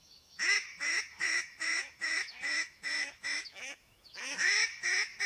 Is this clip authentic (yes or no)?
no